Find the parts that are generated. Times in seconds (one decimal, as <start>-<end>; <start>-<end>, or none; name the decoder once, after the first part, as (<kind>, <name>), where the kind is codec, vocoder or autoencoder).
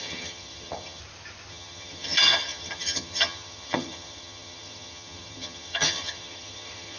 0.0-1.0 (vocoder, HiFi-GAN); 1.5-7.0